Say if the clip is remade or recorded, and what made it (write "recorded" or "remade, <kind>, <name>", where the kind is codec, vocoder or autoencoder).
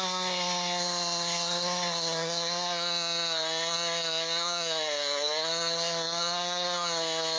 remade, codec, SNAC